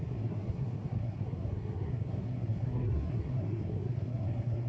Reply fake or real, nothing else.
fake